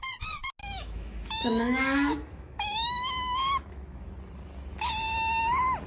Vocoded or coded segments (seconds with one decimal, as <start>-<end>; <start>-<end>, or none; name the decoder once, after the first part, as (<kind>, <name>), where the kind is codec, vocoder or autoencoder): 0.6-4.1 (autoencoder, DAC-VAE)